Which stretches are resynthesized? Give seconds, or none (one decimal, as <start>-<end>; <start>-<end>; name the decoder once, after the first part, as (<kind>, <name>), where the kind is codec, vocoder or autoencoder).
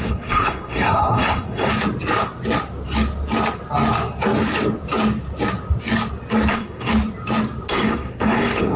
0.0-1.7 (codec, SNAC); 6.5-6.9; 7.7-8.8